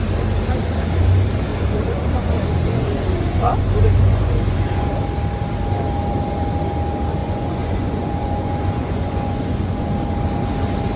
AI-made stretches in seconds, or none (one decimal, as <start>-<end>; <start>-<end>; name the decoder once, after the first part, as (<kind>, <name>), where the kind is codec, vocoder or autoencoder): 1.5-4.9 (vocoder, Vocos); 7.2-9.9